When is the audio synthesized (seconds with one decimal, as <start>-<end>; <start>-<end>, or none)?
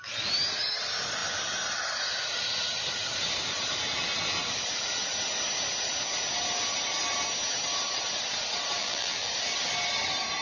8.8-9.3